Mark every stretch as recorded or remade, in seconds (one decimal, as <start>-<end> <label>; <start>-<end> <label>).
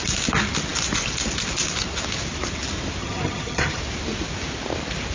0.0-3.0 recorded; 3.0-3.8 remade; 3.8-5.1 recorded